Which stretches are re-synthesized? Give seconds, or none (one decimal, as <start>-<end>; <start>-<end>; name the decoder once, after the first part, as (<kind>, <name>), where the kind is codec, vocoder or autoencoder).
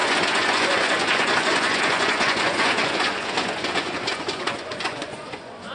0.0-5.7 (vocoder, Vocos)